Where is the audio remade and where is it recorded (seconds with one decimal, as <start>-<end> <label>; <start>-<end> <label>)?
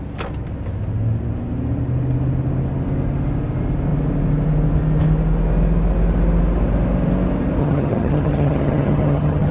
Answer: 0.0-7.6 recorded; 7.6-9.5 remade